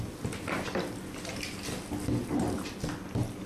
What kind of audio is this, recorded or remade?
recorded